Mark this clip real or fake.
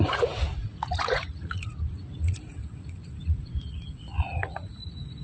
fake